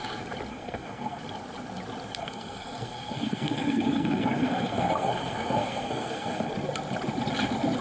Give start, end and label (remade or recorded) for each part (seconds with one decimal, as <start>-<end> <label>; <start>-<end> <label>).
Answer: 0.0-0.5 recorded; 0.5-1.2 remade; 1.2-2.2 recorded; 2.2-6.5 remade; 6.5-7.8 recorded